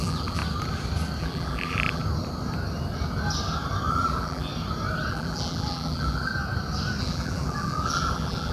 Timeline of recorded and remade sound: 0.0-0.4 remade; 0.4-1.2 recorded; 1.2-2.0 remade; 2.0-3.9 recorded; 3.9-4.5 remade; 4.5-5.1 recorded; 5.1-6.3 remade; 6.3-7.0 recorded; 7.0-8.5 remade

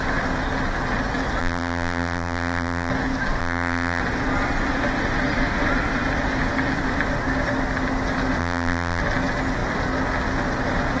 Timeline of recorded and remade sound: 0.0-1.4 recorded; 1.4-2.9 remade; 2.9-3.4 recorded; 3.4-4.0 remade; 4.0-8.4 recorded; 8.4-9.0 remade; 9.0-11.0 recorded